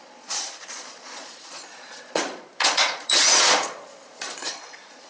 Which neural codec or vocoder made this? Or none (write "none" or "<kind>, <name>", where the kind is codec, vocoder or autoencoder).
vocoder, Vocos